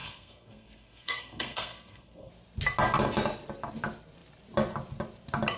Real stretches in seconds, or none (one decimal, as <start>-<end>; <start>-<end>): 2.3-5.6